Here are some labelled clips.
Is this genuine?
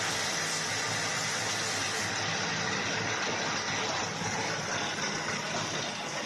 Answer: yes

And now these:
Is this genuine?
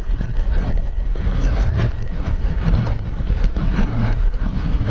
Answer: no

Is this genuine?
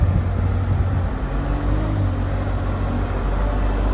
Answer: yes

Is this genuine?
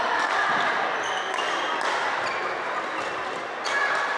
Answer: yes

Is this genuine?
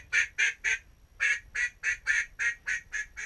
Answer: yes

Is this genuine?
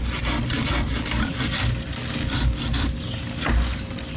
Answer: yes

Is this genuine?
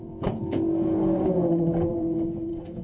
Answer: no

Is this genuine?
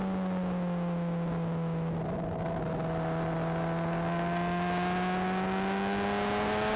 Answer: yes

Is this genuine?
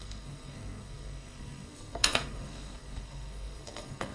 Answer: no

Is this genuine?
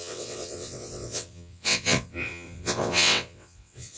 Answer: no